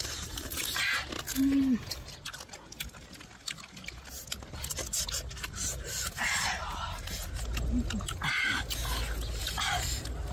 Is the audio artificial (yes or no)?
no